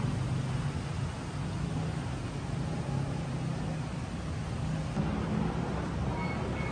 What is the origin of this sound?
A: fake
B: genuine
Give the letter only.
B